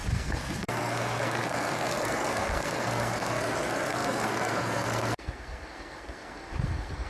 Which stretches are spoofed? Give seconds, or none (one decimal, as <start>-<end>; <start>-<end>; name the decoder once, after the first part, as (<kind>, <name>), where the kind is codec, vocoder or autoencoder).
0.0-7.1 (codec, SNAC)